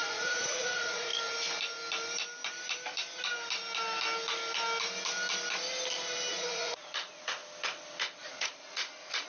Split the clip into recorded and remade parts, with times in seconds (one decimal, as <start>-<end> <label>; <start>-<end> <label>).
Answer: 0.0-1.1 remade; 1.1-6.3 recorded; 6.3-7.4 remade; 7.4-8.3 recorded; 8.3-9.3 remade

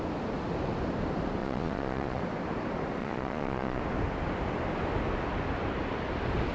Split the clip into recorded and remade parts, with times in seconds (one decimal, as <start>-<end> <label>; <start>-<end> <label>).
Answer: 0.0-1.4 recorded; 1.4-2.2 remade; 2.2-3.0 recorded; 3.0-3.8 remade; 3.8-6.5 recorded